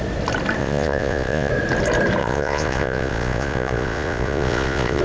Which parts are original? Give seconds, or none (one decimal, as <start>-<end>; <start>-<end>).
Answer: 0.0-0.6; 1.5-2.2